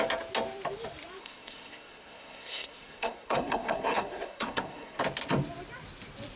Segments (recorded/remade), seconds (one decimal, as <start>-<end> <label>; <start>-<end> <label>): 0.0-1.2 recorded; 1.2-5.0 remade; 5.0-6.4 recorded